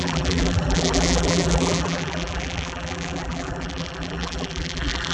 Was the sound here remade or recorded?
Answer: remade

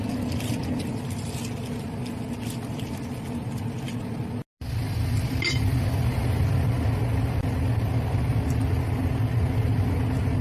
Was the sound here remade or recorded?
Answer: recorded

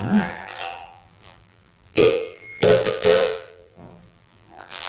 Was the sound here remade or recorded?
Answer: remade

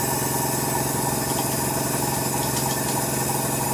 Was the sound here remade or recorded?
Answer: recorded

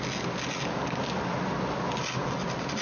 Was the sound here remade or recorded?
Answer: recorded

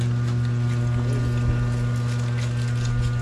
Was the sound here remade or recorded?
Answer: recorded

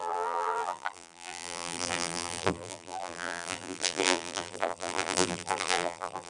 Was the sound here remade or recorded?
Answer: remade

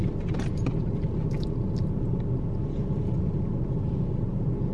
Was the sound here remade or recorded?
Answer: recorded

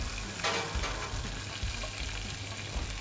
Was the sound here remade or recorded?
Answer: recorded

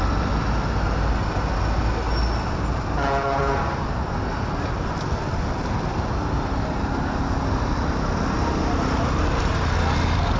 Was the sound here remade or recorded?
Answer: recorded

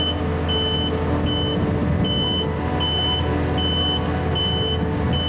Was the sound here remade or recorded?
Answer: recorded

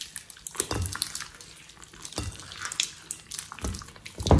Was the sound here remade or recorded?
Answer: recorded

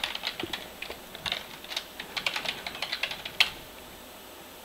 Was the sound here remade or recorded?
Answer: recorded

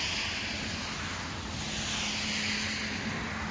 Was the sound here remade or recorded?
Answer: recorded